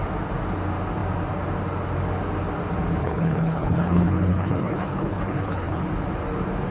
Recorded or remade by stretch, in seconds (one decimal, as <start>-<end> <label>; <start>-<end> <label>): 0.0-3.0 recorded; 3.0-5.8 remade; 5.8-6.7 recorded